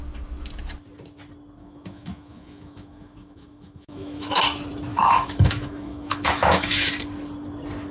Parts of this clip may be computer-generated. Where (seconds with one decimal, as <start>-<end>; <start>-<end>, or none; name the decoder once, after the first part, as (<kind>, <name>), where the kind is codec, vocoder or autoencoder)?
1.6-4.4 (autoencoder, DAC-VAE); 4.9-6.9